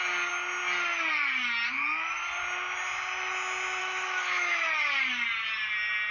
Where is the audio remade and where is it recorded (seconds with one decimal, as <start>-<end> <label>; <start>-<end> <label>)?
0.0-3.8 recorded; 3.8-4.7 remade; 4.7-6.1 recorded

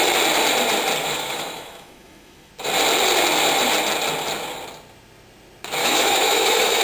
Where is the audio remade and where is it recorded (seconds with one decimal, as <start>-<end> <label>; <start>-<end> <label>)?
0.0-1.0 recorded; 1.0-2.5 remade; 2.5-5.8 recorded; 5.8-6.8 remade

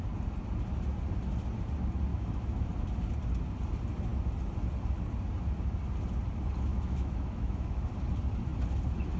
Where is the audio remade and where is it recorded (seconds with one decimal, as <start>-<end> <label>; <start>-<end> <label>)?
0.0-2.1 recorded; 2.1-2.7 remade; 2.7-6.7 recorded; 6.7-7.9 remade; 7.9-9.2 recorded

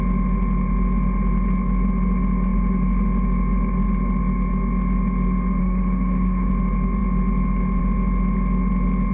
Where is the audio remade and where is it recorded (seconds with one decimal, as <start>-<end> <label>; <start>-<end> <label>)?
0.0-5.6 recorded; 5.6-6.5 remade; 6.5-9.1 recorded

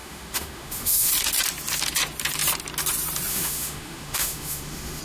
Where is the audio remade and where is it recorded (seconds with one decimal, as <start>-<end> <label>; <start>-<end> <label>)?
0.0-1.1 remade; 1.1-3.3 recorded; 3.3-5.0 remade

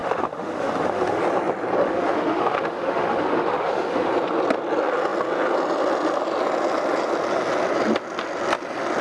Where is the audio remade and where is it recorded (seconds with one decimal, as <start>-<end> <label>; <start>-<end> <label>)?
0.0-1.2 remade; 1.2-1.8 recorded; 1.8-4.1 remade; 4.1-9.0 recorded

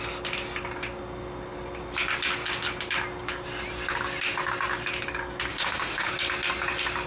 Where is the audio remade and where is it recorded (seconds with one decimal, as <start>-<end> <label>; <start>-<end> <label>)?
0.0-5.5 recorded; 5.5-6.1 remade; 6.1-7.1 recorded

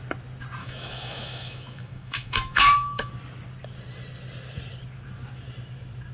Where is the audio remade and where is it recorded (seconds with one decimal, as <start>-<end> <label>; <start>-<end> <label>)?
0.0-0.6 recorded; 0.6-3.1 remade; 3.1-6.1 recorded